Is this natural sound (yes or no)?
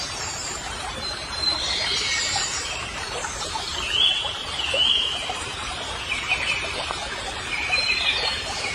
no